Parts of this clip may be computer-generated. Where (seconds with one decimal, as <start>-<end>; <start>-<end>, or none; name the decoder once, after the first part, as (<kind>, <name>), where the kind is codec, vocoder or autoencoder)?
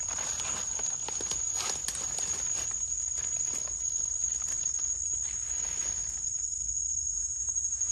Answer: 7.1-7.9 (vocoder, Vocos)